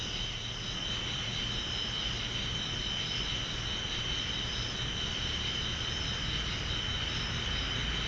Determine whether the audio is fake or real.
real